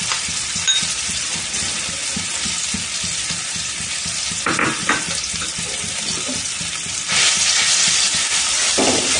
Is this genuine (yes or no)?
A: yes